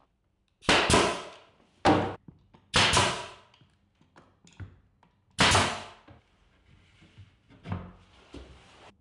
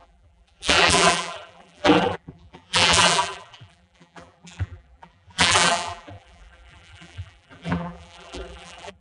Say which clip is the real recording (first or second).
first